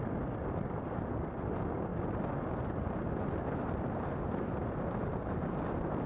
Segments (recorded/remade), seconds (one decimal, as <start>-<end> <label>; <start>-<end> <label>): 0.0-6.1 recorded